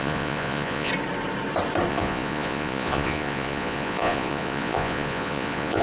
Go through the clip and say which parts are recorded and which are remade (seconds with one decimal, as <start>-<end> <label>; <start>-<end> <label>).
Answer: 0.0-0.9 remade; 0.9-1.9 recorded; 1.9-5.8 remade